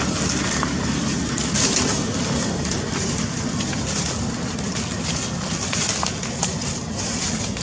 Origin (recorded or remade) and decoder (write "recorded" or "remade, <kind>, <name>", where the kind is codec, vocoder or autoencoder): recorded